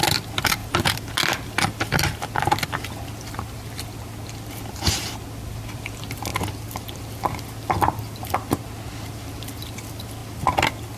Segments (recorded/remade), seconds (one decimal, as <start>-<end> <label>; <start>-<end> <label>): 0.0-11.0 recorded